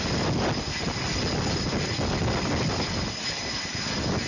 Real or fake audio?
real